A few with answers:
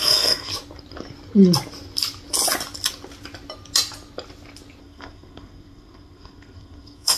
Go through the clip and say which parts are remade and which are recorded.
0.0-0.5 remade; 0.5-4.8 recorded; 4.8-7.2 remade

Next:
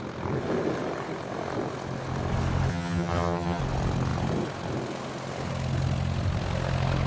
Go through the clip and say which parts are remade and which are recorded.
0.0-2.7 recorded; 2.7-3.6 remade; 3.6-7.1 recorded

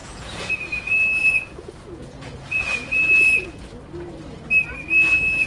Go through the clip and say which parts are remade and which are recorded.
0.0-0.5 remade; 0.5-1.2 recorded; 1.2-3.7 remade; 3.7-5.5 recorded

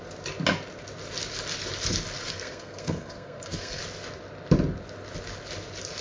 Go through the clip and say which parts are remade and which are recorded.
0.0-2.3 recorded; 2.3-3.8 remade; 3.8-6.0 recorded

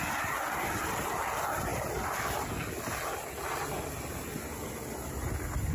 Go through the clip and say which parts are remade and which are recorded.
0.0-5.7 recorded

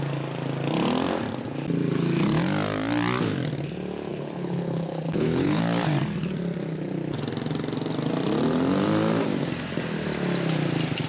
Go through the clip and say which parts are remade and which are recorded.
0.0-4.1 recorded; 4.1-5.6 remade; 5.6-11.1 recorded